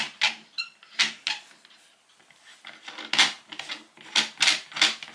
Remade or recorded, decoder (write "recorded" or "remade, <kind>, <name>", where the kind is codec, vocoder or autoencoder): recorded